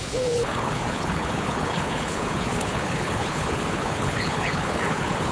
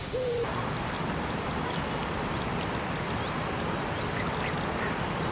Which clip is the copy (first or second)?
first